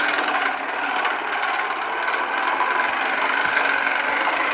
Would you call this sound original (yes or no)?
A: yes